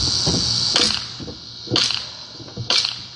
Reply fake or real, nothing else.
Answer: real